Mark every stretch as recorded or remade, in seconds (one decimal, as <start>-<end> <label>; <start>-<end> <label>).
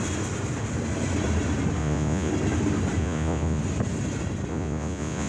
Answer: 0.0-1.8 recorded; 1.8-2.3 remade; 2.3-3.0 recorded; 3.0-3.6 remade; 3.6-4.5 recorded; 4.5-5.3 remade